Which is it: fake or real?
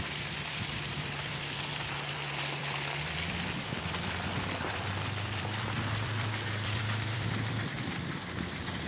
fake